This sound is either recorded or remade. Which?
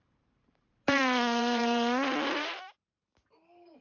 remade